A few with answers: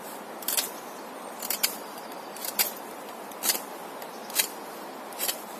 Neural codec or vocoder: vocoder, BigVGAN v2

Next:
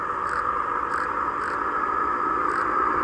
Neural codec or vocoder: none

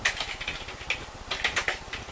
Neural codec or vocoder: none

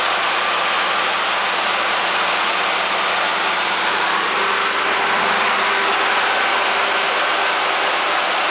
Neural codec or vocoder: none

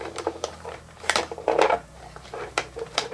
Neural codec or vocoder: vocoder, BigVGAN v2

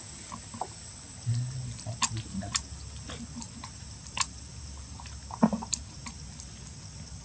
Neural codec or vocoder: none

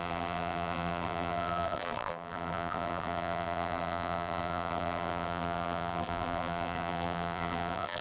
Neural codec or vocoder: vocoder, BigVGAN v2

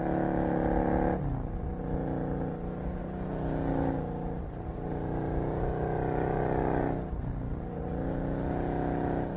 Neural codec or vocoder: none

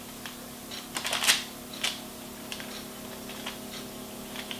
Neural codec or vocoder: none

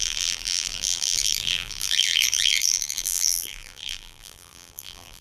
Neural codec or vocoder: vocoder, BigVGAN v2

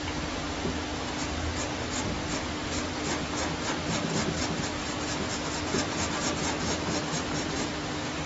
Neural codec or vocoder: none